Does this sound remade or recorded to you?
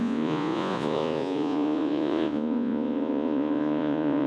remade